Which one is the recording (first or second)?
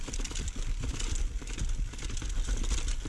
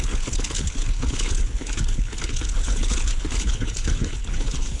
first